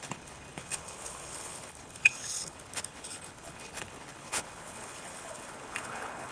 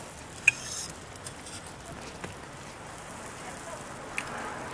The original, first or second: second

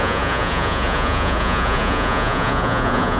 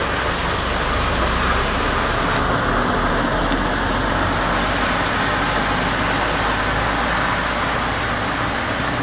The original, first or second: second